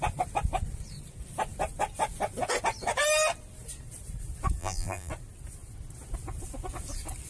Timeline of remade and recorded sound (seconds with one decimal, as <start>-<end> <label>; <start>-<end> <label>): 0.0-4.6 recorded; 4.6-5.1 remade; 5.1-7.3 recorded